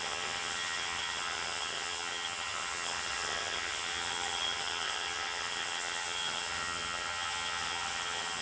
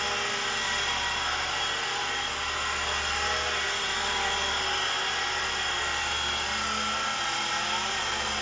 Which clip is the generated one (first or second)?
first